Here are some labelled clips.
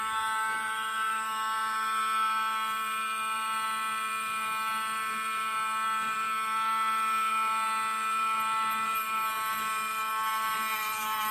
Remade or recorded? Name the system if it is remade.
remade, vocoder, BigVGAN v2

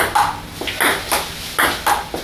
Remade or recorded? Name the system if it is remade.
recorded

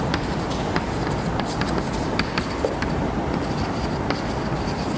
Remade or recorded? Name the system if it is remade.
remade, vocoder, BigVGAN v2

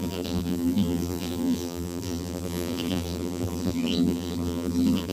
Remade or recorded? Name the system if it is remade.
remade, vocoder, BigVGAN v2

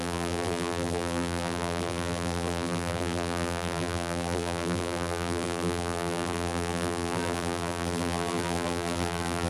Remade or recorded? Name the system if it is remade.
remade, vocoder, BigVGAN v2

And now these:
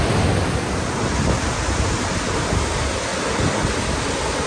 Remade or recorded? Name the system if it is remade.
recorded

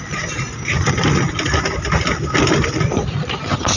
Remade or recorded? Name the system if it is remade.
recorded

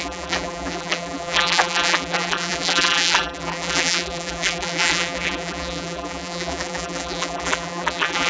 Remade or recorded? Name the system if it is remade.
remade, vocoder, BigVGAN v2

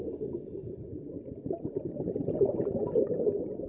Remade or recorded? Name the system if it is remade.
remade, vocoder, BigVGAN v2